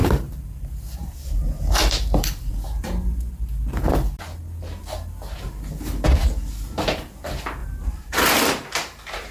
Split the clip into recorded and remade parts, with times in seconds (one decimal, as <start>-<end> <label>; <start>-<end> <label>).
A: 0.0-2.5 remade; 2.5-7.6 recorded; 7.6-9.3 remade